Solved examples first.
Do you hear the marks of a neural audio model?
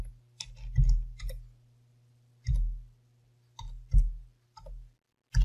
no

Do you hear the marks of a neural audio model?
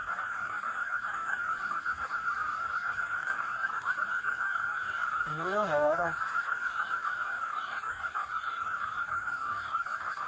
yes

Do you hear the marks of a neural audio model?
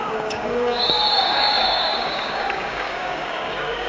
yes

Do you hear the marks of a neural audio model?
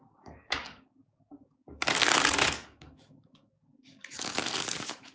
yes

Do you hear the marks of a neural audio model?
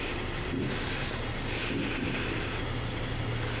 no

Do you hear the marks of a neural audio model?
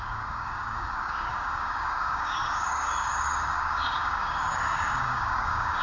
yes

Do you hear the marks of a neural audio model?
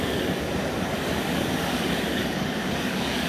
yes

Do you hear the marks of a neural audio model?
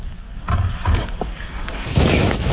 yes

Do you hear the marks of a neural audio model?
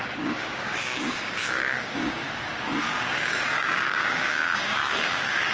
yes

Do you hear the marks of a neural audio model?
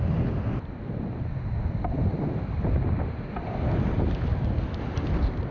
no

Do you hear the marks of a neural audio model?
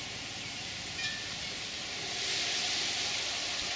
no